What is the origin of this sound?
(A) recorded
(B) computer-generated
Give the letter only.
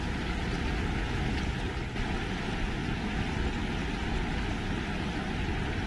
A